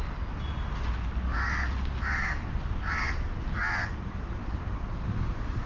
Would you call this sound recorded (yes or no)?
yes